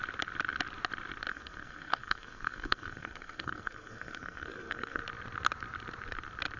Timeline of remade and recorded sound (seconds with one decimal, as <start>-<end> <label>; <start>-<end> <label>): 0.0-1.3 recorded; 1.3-5.0 remade; 5.0-6.6 recorded